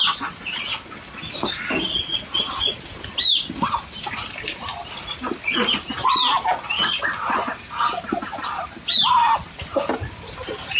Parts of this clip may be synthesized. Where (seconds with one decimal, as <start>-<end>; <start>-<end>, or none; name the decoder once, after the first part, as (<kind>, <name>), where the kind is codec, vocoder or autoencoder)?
none